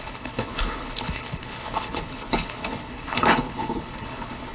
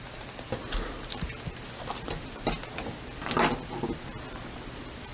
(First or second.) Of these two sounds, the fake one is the first